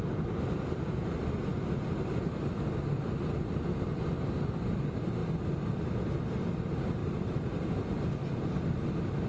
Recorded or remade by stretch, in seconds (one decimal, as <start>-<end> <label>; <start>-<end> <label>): 0.0-9.3 recorded